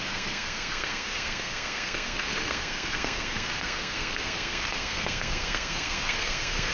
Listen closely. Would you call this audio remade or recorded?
remade